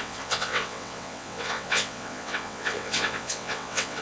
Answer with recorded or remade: remade